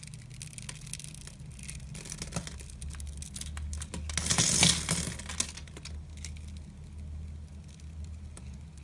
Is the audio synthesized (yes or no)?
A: no